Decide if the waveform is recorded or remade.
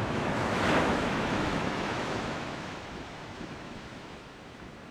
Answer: remade